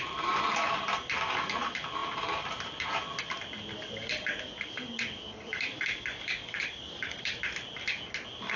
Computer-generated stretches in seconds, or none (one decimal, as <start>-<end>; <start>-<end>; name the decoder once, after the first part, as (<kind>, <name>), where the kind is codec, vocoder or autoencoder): 3.7-7.4 (codec, DAC)